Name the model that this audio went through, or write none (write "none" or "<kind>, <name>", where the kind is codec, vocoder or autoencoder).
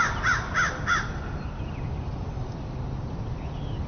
none